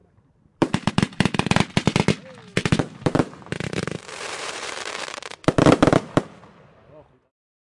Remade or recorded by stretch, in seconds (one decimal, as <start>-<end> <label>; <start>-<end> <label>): 0.0-0.9 remade; 0.9-2.6 recorded; 2.6-5.3 remade; 5.3-7.7 recorded